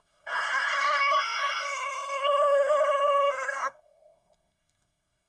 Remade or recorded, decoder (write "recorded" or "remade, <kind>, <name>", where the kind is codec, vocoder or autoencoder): remade, codec, SNAC